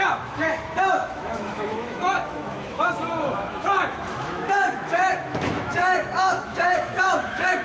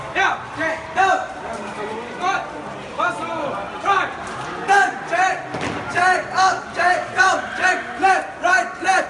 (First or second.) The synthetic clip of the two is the first